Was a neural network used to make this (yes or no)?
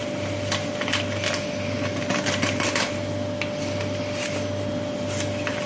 no